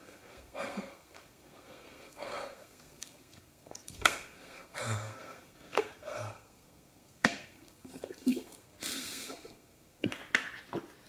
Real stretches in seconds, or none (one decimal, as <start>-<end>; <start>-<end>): 10.2-11.1